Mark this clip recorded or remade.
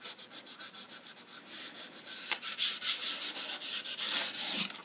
recorded